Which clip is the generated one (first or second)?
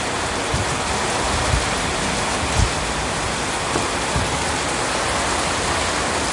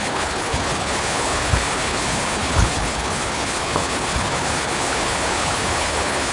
second